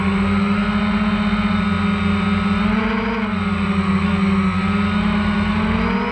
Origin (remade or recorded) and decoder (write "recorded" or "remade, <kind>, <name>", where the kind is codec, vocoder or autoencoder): recorded